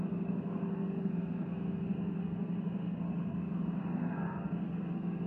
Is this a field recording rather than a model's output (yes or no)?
no